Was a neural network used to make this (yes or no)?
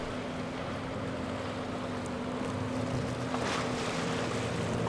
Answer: no